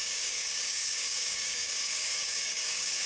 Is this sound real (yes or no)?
no